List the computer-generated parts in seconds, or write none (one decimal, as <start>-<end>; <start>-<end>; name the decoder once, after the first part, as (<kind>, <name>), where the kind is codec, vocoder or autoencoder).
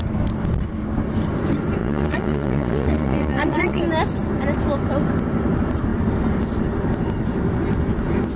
1.8-3.8 (vocoder, Vocos)